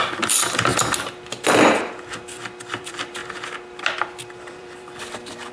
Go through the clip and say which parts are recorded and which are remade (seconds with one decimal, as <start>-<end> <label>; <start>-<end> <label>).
0.0-0.7 remade; 0.7-2.2 recorded; 2.2-3.2 remade; 3.2-4.5 recorded; 4.5-5.5 remade